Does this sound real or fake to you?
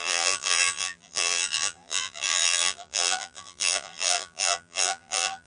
fake